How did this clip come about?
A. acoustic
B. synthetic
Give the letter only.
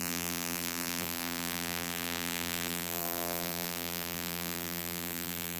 B